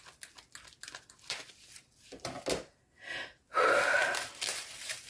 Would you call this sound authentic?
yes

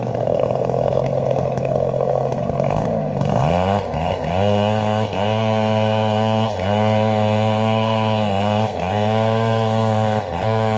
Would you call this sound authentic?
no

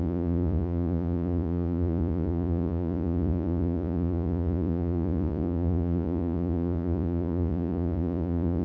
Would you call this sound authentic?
no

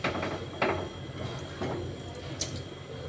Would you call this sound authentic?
yes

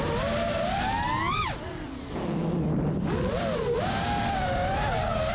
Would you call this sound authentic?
yes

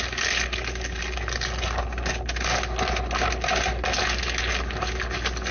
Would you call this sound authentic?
yes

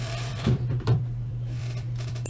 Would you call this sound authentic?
no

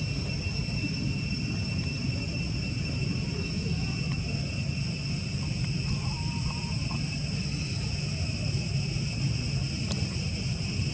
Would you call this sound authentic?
yes